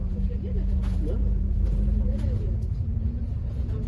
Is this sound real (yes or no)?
no